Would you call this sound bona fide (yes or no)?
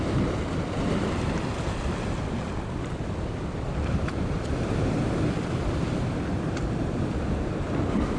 yes